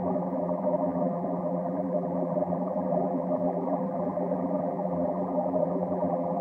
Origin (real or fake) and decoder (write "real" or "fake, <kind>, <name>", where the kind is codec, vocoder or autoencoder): fake, vocoder, BigVGAN v2